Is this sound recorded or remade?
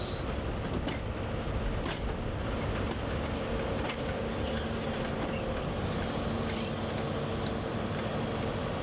recorded